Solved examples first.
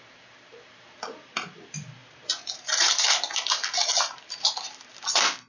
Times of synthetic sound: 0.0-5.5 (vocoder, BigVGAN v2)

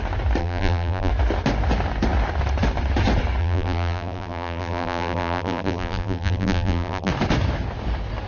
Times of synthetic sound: 0.4-1.1 (vocoder, BigVGAN v2); 3.4-7.1

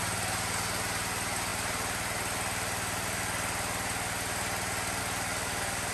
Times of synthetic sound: none

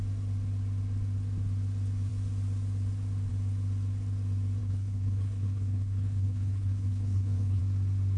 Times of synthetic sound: 4.6-7.6 (codec, HILCodec)

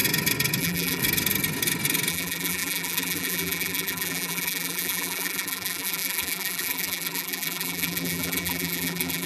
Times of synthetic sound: 0.6-1.0 (vocoder, BigVGAN v2); 2.1-9.3

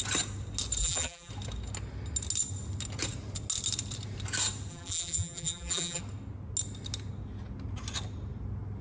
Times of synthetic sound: 0.8-1.3 (vocoder, BigVGAN v2); 4.7-6.0

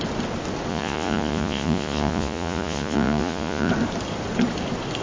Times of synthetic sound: 0.7-3.7 (vocoder, Vocos)